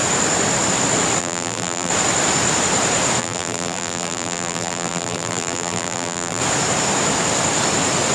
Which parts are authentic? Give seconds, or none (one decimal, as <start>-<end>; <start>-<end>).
0.0-1.2; 1.9-3.2; 6.4-8.1